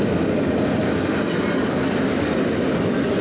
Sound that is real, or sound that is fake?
real